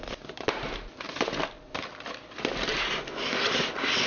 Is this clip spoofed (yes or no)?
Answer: no